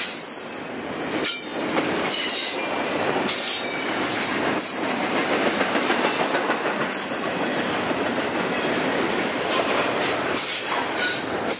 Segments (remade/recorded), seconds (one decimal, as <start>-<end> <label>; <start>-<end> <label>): 0.0-11.6 recorded